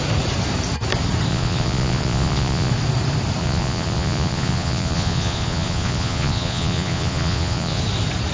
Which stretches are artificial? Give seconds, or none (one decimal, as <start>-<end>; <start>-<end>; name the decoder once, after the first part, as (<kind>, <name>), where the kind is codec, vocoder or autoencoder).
1.3-2.7 (vocoder, Vocos); 3.4-7.8